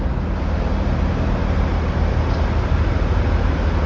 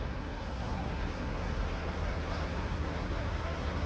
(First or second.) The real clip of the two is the first